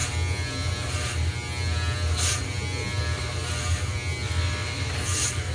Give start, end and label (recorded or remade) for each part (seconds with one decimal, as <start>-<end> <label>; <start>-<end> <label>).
0.0-5.5 recorded